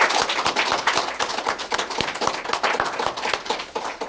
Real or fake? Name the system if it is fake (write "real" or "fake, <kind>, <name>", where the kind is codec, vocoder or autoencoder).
real